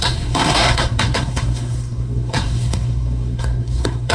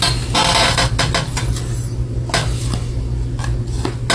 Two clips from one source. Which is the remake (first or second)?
first